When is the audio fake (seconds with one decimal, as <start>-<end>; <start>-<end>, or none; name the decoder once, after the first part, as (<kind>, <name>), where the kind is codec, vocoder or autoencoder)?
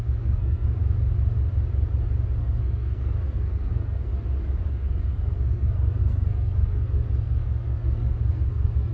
0.0-0.8 (codec, SNAC); 2.4-4.1; 4.7-8.9